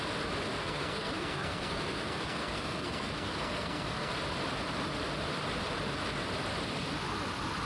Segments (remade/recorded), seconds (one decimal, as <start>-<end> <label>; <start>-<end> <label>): 0.0-0.6 recorded; 0.6-4.1 remade; 4.1-7.7 recorded